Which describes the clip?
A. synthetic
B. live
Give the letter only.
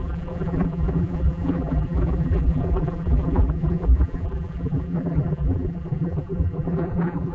A